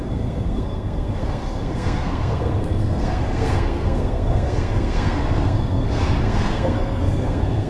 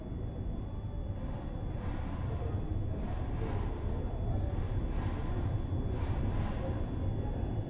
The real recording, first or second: second